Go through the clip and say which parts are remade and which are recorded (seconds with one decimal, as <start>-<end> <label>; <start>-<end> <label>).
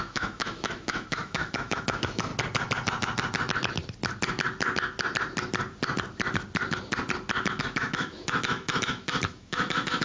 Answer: 0.0-2.3 remade; 2.3-7.5 recorded; 7.5-10.0 remade